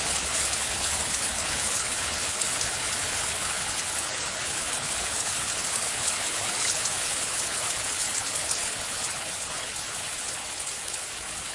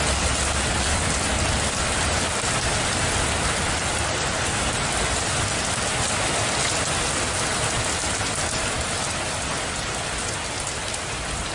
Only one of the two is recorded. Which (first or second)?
second